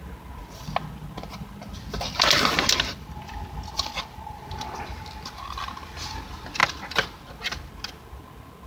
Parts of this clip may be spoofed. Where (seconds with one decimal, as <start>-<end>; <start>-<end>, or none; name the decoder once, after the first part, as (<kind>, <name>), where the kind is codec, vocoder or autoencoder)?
none